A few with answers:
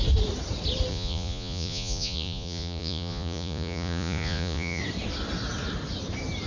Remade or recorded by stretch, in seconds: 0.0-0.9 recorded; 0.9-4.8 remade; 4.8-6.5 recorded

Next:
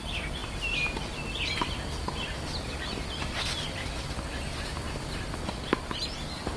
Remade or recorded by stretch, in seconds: 0.0-6.6 recorded